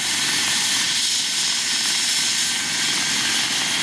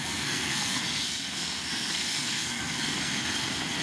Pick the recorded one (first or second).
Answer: first